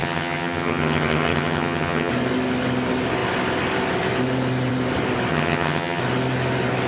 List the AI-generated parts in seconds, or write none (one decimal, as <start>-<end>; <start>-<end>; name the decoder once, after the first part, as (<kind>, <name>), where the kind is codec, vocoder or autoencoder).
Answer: 0.0-2.1 (vocoder, HiFi-GAN); 5.3-6.0